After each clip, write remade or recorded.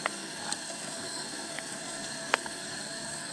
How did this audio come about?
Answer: remade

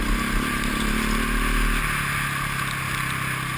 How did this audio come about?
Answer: recorded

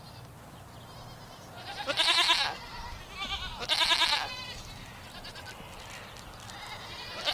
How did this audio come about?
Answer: recorded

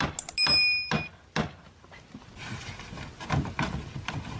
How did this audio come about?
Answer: recorded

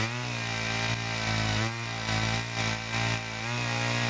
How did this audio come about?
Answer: recorded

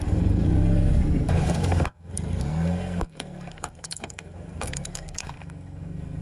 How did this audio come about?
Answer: remade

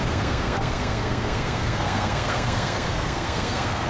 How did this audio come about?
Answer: remade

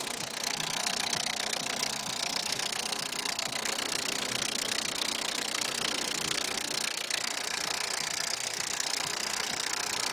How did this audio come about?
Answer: remade